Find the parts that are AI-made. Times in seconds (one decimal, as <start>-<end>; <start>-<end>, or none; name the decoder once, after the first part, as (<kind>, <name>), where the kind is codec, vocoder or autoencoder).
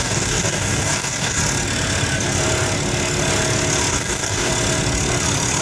0.0-1.4 (codec, DAC); 3.9-4.5